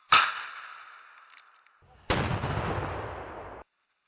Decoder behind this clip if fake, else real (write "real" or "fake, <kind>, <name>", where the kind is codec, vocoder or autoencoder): real